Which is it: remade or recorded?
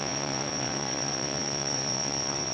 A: remade